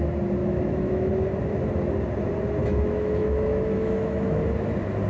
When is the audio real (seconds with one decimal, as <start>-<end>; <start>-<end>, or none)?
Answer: 0.0-0.4; 1.1-2.6; 4.4-5.1